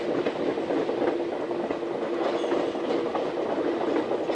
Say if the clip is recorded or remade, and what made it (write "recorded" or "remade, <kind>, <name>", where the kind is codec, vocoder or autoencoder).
recorded